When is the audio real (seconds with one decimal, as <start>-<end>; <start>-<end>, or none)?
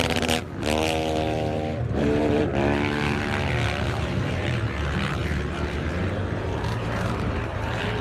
0.4-1.8; 2.5-3.8